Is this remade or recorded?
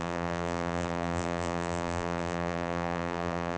remade